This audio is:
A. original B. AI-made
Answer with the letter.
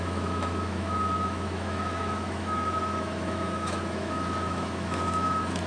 B